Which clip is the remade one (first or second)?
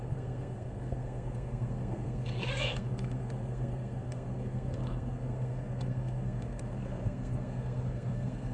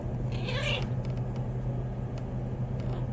first